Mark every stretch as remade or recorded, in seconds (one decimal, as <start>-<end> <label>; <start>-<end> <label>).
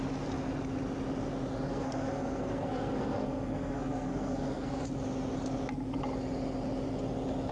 0.0-1.7 recorded; 1.7-4.8 remade; 4.8-7.5 recorded